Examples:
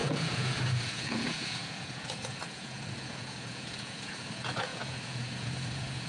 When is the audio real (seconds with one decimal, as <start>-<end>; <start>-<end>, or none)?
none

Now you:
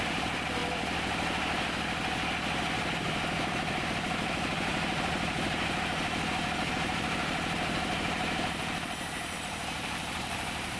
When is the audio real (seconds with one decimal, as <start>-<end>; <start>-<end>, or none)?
0.6-3.8; 4.7-6.7

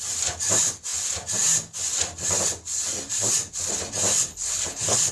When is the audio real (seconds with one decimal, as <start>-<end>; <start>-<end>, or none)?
0.0-4.3

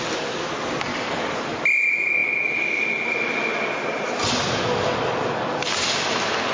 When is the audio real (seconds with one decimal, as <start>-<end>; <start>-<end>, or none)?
0.0-0.9; 1.6-6.5

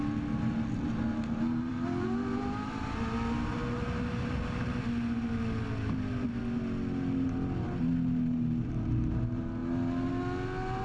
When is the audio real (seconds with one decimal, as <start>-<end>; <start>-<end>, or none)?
0.0-10.8